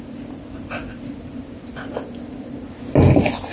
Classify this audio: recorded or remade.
recorded